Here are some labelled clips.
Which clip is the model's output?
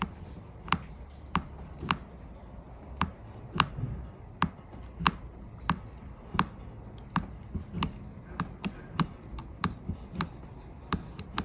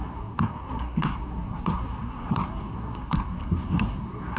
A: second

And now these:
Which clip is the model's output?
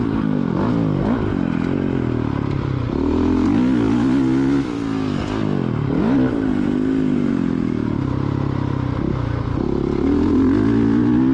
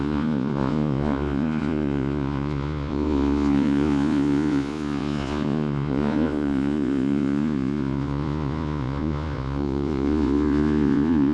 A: second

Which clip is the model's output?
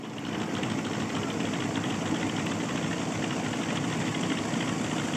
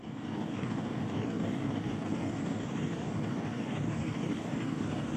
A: second